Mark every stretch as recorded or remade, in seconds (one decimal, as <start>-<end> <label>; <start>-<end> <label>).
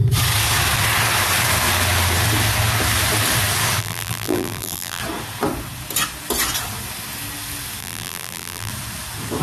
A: 0.0-3.8 recorded; 3.8-5.0 remade; 5.0-7.8 recorded; 7.8-8.7 remade; 8.7-9.4 recorded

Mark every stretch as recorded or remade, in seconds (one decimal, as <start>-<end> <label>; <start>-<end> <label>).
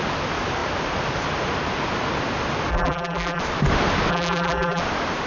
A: 0.0-2.7 recorded; 2.7-3.4 remade; 3.4-4.1 recorded; 4.1-4.8 remade; 4.8-5.3 recorded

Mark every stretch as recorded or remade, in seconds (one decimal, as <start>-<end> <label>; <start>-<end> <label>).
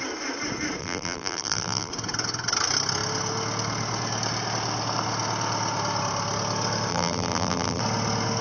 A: 0.0-0.8 recorded; 0.8-1.9 remade; 1.9-6.9 recorded; 6.9-7.8 remade; 7.8-8.4 recorded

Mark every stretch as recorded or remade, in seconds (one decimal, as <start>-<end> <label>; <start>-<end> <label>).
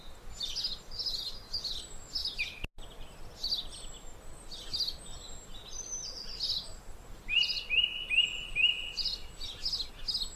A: 0.0-10.4 recorded